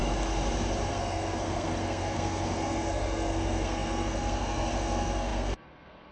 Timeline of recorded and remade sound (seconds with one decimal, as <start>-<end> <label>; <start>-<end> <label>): 0.0-0.9 recorded; 0.9-6.1 remade